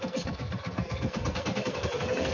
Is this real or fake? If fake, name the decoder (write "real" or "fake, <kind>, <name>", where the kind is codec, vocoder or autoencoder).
fake, codec, SNAC